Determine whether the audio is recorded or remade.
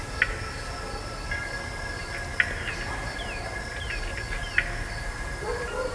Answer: recorded